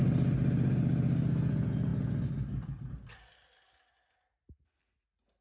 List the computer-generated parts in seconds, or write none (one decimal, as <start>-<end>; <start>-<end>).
none